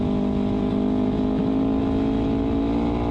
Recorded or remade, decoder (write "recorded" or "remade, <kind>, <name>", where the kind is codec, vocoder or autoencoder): recorded